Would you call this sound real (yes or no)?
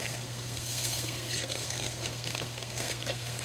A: no